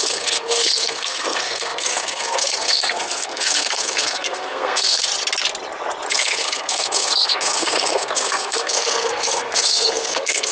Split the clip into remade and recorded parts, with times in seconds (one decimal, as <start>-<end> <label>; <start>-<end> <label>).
0.0-5.1 remade; 5.1-6.1 recorded; 6.1-10.5 remade